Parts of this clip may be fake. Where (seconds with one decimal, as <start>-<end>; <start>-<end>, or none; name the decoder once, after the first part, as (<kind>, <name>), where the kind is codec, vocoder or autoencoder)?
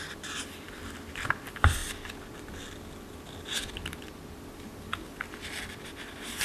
none